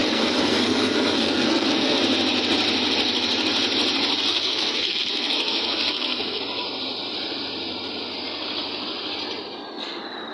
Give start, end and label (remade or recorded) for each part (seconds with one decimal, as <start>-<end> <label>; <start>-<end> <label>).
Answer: 0.0-2.0 remade; 2.0-4.3 recorded; 4.3-6.4 remade; 6.4-10.3 recorded